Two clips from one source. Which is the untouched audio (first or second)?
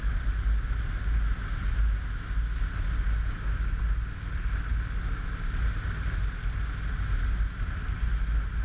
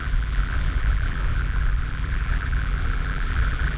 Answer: first